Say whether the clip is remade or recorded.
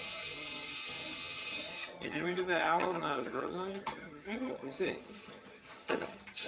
remade